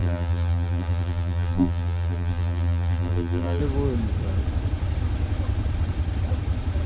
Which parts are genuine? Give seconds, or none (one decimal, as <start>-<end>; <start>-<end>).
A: 3.6-6.9